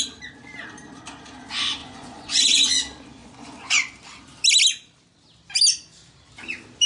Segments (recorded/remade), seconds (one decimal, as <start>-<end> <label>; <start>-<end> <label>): 0.0-1.8 recorded; 1.8-2.4 remade; 2.4-3.2 recorded; 3.2-3.9 remade; 3.9-6.9 recorded